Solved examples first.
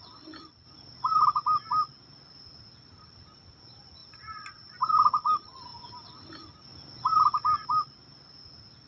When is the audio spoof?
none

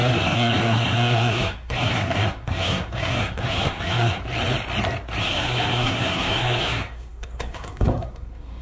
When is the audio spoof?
0.0-4.2 (codec, SNAC); 5.2-8.6